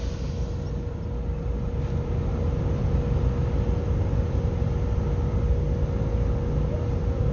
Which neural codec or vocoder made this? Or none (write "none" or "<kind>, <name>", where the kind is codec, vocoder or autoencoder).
none